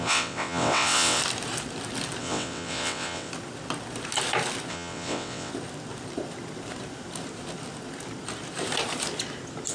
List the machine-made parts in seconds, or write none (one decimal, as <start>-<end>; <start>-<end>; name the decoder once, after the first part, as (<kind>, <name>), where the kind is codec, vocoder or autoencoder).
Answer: 0.0-1.2 (vocoder, WaveNeXt); 2.2-3.3; 4.7-5.5